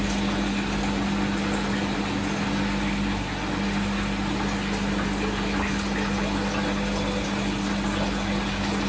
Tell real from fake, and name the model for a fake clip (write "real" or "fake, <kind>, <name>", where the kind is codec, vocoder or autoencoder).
real